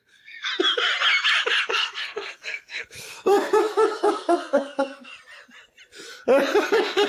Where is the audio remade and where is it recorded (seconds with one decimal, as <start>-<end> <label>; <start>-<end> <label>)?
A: 0.0-0.5 remade; 0.5-1.6 recorded; 1.6-5.1 remade; 5.1-6.6 recorded; 6.6-7.1 remade